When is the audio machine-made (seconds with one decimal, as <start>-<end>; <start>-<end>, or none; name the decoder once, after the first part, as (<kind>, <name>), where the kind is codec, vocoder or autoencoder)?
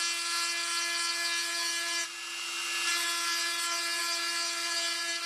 none